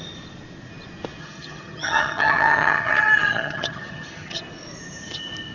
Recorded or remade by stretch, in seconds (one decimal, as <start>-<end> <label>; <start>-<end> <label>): 0.0-1.2 recorded; 1.2-4.4 remade; 4.4-5.5 recorded